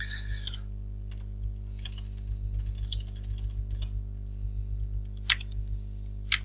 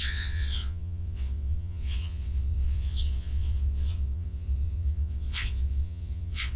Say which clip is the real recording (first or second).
first